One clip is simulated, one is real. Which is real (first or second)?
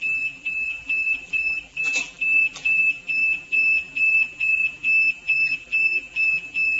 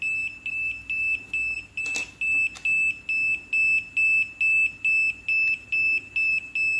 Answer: second